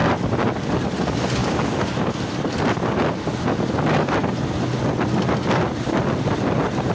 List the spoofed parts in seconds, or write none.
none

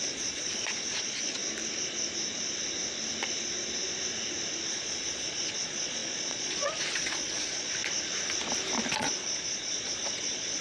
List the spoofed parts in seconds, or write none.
0.0-1.4 (vocoder, Vocos); 4.7-7.8; 9.0-10.6